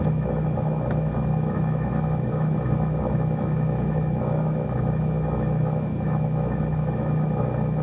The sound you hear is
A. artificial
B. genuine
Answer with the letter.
A